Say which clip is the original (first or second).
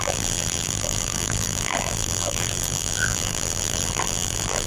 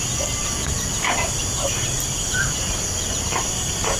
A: second